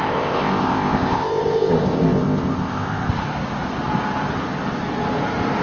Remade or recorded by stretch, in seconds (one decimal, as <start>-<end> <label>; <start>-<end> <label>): 0.0-3.1 remade; 3.1-5.6 recorded